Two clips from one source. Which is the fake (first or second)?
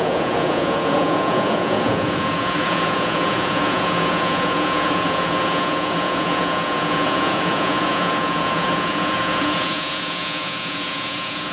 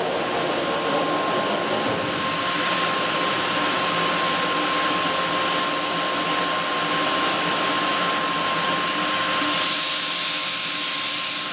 first